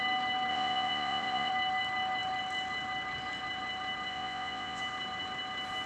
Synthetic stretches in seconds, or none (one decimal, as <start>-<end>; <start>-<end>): 0.5-1.5; 4.1-4.8